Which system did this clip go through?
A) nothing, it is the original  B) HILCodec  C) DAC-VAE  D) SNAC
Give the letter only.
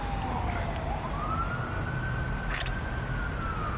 A